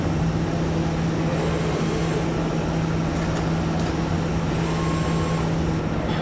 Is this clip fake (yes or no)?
no